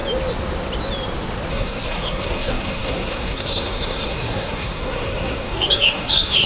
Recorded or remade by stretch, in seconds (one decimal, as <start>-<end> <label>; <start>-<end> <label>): 0.0-1.5 recorded; 1.5-6.5 remade